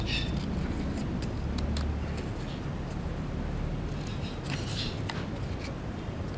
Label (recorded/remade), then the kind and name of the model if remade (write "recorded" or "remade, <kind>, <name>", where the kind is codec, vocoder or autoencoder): recorded